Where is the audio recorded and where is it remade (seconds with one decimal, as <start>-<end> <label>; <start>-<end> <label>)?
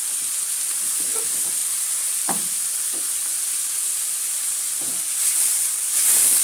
0.0-5.5 recorded; 5.5-6.0 remade; 6.0-6.4 recorded